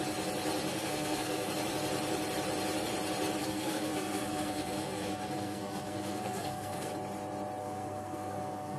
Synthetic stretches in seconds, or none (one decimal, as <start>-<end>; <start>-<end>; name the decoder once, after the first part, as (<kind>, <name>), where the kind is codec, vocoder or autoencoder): 0.7-1.5 (codec, SNAC); 3.4-6.9; 7.6-8.8